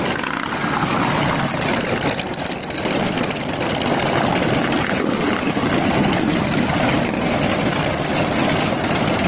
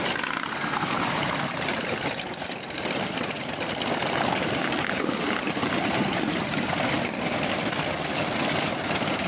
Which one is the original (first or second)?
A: first